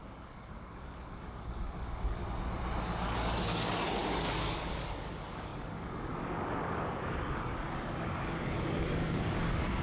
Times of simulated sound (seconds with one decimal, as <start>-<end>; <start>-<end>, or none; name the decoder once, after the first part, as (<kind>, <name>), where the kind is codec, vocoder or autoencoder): 0.0-2.2 (codec, DAC); 2.8-9.8

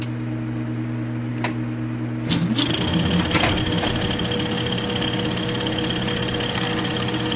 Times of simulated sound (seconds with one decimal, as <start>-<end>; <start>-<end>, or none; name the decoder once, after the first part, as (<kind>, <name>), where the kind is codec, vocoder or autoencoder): none

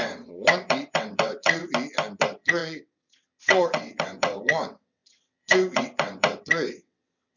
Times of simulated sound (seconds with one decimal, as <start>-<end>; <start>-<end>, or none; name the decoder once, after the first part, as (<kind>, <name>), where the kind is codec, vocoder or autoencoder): 0.0-1.6 (vocoder, WaveNeXt); 2.2-7.4

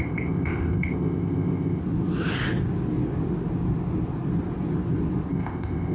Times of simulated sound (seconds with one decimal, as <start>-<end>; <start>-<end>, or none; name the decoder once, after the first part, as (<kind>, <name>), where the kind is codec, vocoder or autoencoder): 0.0-1.8 (codec, ZipCodec); 5.3-5.9

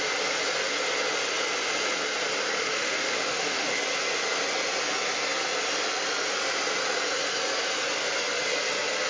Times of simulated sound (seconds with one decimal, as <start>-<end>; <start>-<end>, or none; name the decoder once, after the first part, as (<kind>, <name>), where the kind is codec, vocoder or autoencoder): 2.6-3.8 (autoencoder, DAC-VAE)

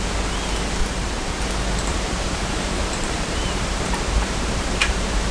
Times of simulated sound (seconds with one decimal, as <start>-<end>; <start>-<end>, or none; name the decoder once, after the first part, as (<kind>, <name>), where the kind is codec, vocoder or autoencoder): 0.8-1.4 (vocoder, BigVGAN v2); 1.9-5.3

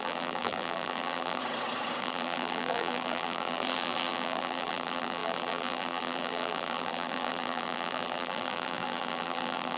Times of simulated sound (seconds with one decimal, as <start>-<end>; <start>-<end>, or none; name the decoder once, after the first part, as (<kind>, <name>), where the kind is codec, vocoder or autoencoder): 0.0-1.4 (vocoder, BigVGAN v2); 2.0-9.8

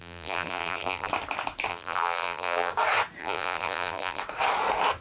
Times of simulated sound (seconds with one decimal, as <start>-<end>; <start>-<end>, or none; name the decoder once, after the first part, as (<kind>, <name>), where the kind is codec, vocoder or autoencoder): 0.0-1.1 (vocoder, BigVGAN v2); 1.7-2.7; 3.2-4.2